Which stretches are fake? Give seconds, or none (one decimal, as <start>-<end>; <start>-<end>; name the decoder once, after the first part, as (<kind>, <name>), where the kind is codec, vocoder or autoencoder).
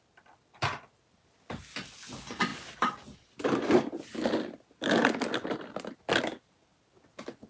2.5-6.0 (vocoder, BigVGAN v2)